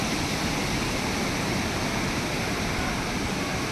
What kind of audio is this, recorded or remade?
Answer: recorded